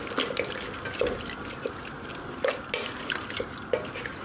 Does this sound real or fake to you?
real